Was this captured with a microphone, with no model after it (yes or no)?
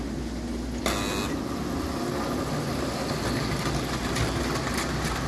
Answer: yes